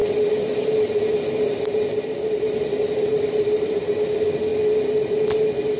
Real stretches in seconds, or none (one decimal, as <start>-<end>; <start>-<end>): 0.0-5.8